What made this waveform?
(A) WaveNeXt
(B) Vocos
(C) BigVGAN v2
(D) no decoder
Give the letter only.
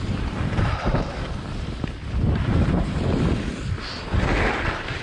D